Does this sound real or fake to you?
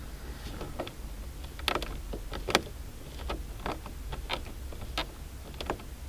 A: real